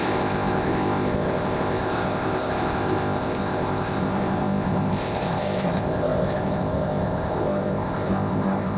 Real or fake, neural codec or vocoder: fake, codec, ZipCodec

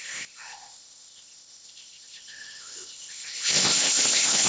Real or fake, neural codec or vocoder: fake, codec, ZipCodec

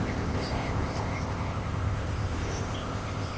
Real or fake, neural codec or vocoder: fake, codec, ZipCodec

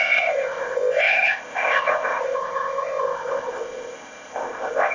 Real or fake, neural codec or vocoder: fake, codec, ZipCodec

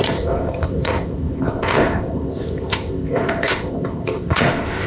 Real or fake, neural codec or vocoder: fake, codec, ZipCodec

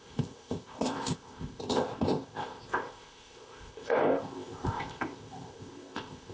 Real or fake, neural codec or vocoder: fake, codec, ZipCodec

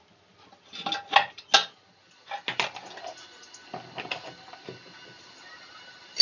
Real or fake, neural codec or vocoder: real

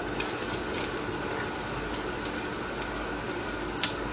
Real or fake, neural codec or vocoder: real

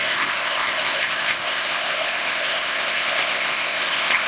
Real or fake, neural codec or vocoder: fake, codec, ZipCodec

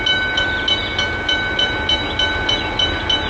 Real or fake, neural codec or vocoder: real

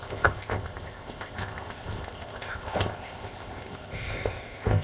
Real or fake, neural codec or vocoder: fake, codec, ZipCodec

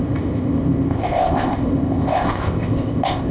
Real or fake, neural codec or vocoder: fake, codec, ZipCodec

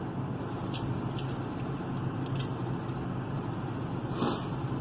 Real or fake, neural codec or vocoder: real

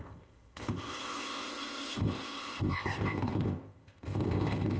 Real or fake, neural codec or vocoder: fake, codec, ZipCodec